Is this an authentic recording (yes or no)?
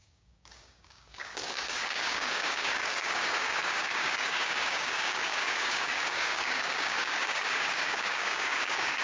no